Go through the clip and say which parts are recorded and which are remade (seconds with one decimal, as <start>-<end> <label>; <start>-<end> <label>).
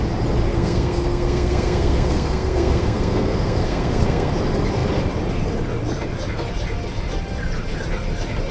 0.0-0.5 recorded; 0.5-4.3 remade; 4.3-8.5 recorded